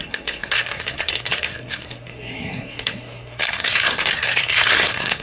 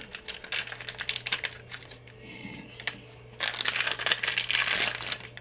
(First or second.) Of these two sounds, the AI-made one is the first